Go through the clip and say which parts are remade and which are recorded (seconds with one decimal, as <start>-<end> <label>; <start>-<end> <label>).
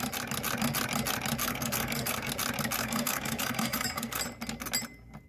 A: 0.0-1.4 recorded; 1.4-2.3 remade; 2.3-2.8 recorded; 2.8-4.2 remade; 4.2-5.3 recorded